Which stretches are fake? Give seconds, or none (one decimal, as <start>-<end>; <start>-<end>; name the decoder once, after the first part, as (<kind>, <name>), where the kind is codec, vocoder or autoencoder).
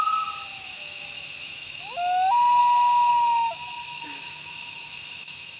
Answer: 0.5-2.6 (autoencoder, DAC-VAE); 3.1-5.6